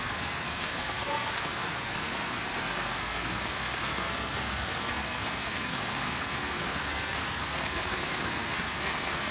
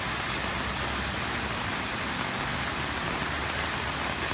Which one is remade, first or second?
first